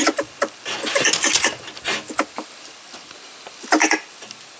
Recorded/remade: recorded